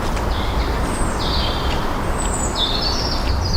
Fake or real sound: real